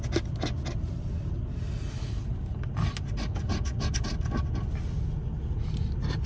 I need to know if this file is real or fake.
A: real